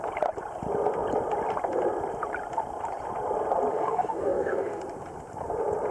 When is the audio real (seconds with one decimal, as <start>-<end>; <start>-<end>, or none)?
0.0-3.7; 4.8-5.9